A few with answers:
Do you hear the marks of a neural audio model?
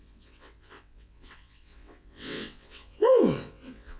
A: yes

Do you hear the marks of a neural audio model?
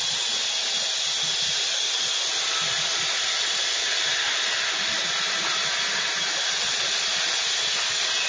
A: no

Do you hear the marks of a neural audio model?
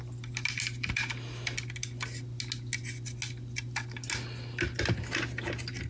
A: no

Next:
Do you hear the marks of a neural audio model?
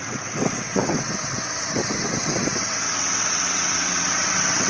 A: yes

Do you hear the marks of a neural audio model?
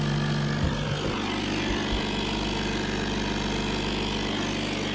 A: no